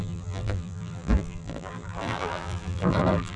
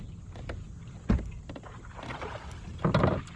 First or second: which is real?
second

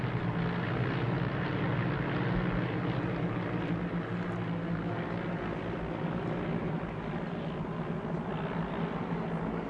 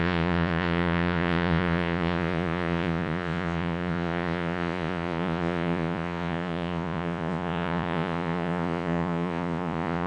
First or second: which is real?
first